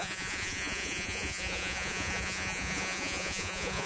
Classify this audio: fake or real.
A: fake